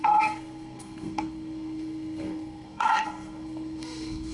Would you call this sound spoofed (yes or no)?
yes